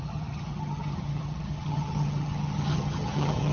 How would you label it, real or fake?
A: fake